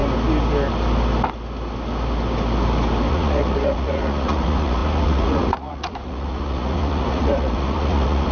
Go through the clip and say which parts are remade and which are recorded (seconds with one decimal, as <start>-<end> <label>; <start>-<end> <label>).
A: 0.0-3.1 recorded; 3.1-8.3 remade